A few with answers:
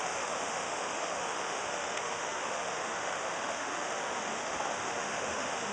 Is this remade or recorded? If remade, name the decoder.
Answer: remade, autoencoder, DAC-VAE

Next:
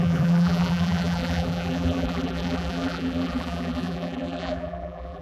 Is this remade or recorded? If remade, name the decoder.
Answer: remade, vocoder, BigVGAN v2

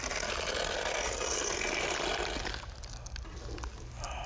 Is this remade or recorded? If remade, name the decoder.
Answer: recorded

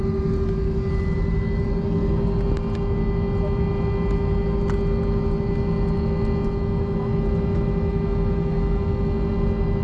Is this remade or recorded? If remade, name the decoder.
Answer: recorded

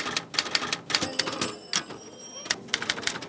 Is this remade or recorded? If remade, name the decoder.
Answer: recorded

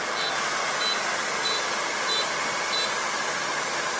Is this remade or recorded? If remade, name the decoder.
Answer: recorded